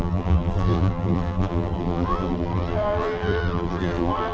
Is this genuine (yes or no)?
no